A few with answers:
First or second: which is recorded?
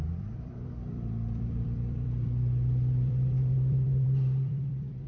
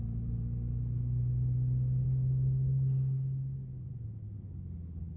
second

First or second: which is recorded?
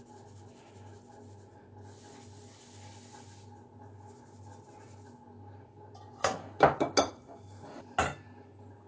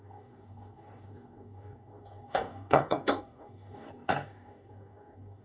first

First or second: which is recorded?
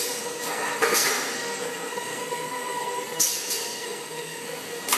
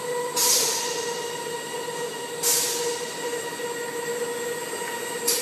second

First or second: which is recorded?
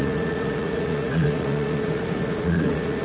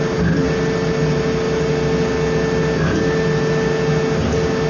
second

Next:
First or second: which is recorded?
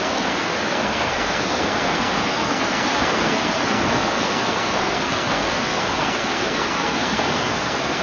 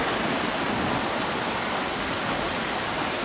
second